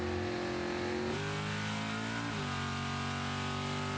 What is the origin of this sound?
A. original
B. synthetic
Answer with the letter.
A